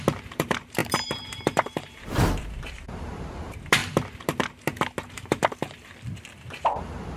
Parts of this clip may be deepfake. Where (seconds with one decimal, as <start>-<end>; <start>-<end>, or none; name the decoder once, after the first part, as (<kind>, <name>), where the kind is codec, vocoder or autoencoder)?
0.0-3.8 (vocoder, BigVGAN v2); 5.0-5.4